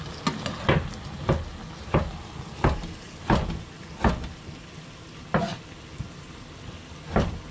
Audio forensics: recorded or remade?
recorded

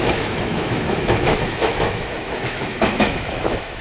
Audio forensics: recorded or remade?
remade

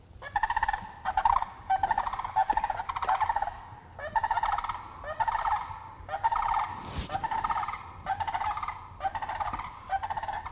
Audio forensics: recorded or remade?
recorded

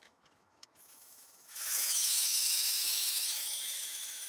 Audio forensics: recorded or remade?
remade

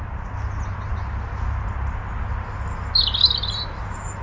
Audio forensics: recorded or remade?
recorded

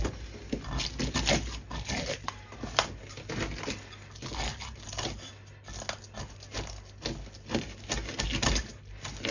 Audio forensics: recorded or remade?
recorded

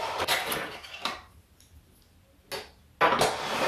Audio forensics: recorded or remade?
recorded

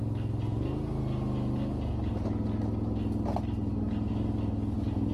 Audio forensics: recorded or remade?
recorded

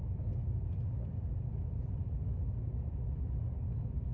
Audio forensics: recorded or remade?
recorded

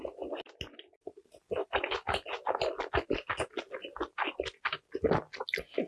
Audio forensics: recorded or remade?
recorded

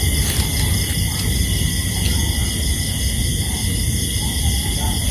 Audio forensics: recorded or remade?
recorded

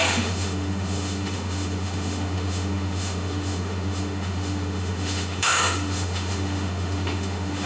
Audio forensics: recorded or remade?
remade